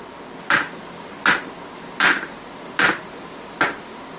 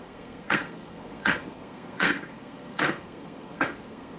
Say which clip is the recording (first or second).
first